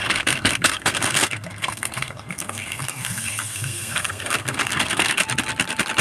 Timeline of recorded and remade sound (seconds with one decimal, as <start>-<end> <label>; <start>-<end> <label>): 0.0-5.2 remade; 5.2-6.0 recorded